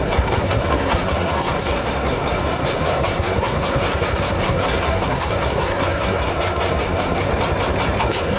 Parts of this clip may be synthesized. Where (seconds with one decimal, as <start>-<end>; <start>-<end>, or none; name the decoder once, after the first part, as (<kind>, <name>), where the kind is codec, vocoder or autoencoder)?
0.0-7.3 (codec, SNAC); 8.0-8.4